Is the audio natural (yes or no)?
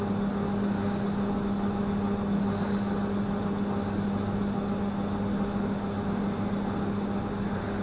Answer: yes